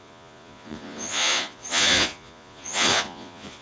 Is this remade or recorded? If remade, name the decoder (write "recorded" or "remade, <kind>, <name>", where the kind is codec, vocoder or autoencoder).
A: remade, vocoder, Vocos